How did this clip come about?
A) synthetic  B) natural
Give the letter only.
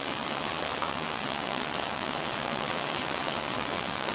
A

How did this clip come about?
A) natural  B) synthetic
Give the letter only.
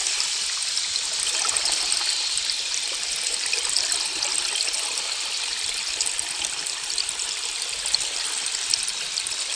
A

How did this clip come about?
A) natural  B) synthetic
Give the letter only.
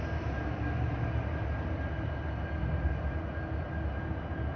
A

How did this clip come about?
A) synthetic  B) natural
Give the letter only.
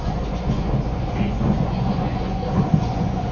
A